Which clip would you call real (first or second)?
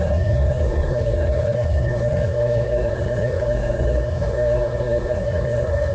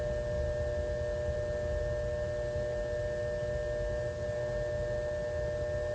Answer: second